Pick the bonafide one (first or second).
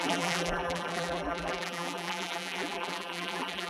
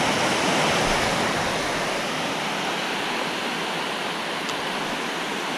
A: second